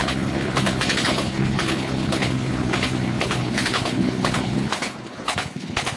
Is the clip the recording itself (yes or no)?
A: no